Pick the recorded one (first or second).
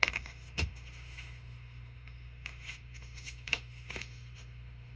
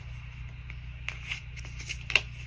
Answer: second